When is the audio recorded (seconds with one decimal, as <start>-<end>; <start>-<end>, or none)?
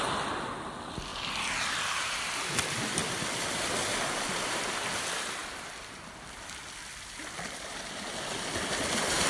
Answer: 0.0-1.1; 1.6-3.0; 7.8-9.3